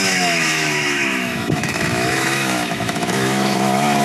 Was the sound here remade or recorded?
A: remade